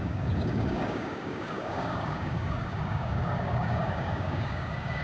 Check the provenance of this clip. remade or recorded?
remade